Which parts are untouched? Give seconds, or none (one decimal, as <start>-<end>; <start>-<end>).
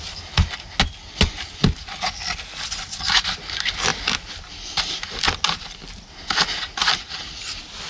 0.0-7.9